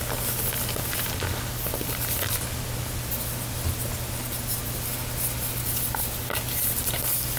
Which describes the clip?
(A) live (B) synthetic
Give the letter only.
A